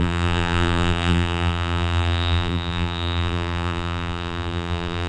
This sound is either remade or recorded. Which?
remade